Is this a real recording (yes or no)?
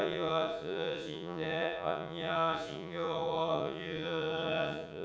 no